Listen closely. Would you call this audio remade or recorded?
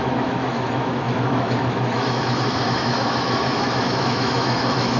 remade